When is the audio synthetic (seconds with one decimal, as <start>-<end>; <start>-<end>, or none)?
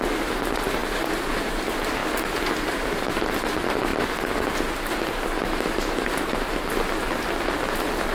none